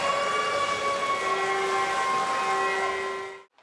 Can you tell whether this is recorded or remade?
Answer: recorded